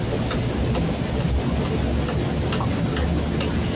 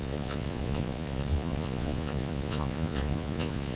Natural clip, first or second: first